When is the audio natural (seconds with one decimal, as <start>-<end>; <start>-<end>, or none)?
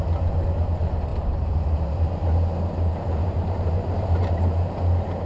0.0-1.1; 4.3-5.3